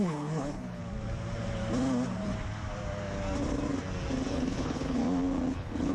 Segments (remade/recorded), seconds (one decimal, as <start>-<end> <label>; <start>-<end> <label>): 0.0-0.8 remade; 0.8-4.3 recorded; 4.3-5.0 remade; 5.0-5.5 recorded; 5.5-5.9 remade